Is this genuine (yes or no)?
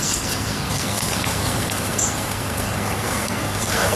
no